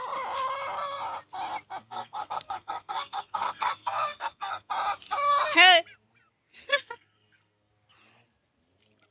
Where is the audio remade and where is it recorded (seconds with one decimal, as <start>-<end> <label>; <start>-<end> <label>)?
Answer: 0.0-1.8 recorded; 1.8-4.7 remade; 4.7-6.7 recorded; 6.7-7.7 remade; 7.7-9.1 recorded